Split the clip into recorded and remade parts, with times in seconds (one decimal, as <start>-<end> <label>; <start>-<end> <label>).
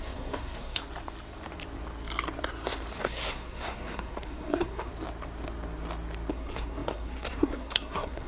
0.0-0.8 remade; 0.8-2.9 recorded; 2.9-4.9 remade; 4.9-6.3 recorded; 6.3-8.3 remade